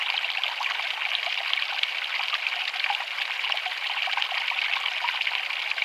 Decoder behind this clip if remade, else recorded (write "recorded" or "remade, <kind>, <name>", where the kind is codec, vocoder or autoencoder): recorded